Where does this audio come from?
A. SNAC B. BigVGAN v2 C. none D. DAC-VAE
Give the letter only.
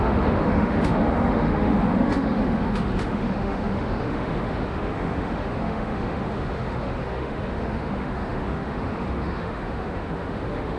D